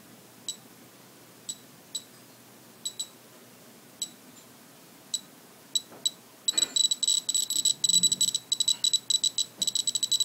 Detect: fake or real real